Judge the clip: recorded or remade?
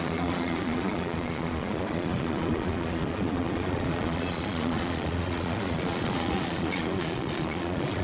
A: remade